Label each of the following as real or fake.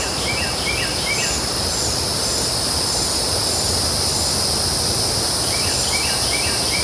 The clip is real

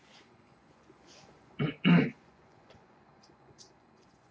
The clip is fake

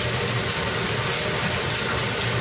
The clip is real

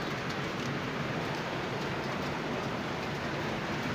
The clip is real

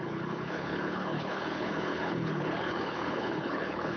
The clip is fake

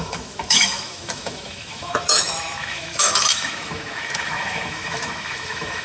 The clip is fake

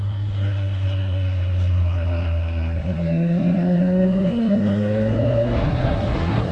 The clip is fake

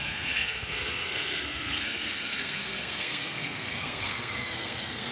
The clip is fake